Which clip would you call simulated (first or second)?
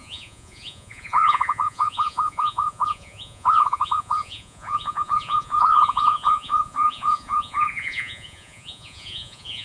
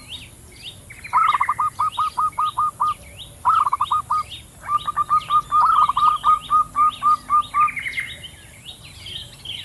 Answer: first